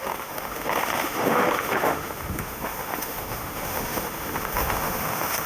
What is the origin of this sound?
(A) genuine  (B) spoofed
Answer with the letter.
B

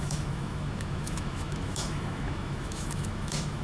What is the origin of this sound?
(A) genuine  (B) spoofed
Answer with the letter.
B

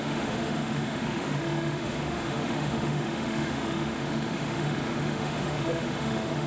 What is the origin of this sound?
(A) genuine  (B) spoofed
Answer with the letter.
B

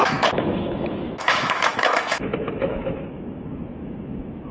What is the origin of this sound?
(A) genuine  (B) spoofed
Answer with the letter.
B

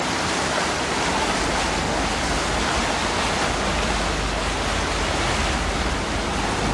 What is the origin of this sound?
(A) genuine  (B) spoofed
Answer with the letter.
A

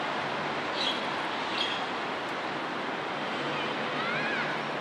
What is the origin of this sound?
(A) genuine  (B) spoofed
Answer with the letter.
A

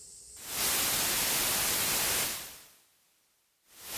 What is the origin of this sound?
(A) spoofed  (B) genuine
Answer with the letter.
B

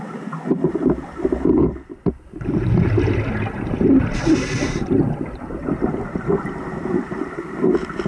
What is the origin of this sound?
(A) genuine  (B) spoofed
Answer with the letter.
A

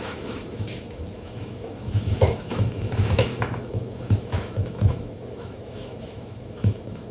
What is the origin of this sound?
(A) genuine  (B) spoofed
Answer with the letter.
B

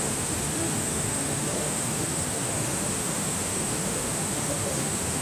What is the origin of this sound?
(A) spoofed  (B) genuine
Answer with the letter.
A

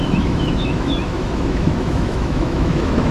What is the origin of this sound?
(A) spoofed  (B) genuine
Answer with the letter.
A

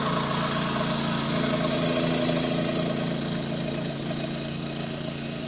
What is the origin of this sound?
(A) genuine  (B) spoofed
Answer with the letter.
A